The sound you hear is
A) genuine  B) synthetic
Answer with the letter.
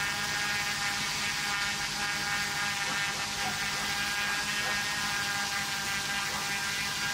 A